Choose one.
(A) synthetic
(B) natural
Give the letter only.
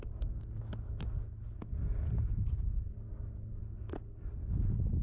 B